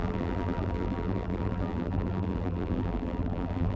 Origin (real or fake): fake